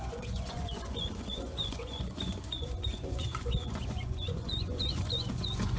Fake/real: fake